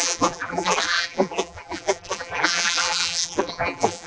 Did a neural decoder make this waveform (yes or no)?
yes